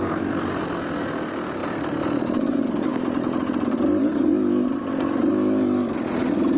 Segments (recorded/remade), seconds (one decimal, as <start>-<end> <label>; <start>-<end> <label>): 0.0-6.6 recorded